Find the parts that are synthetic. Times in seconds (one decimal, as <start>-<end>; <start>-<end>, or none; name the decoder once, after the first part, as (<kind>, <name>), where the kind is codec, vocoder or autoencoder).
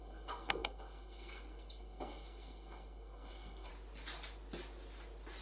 0.0-3.7 (codec, SNAC)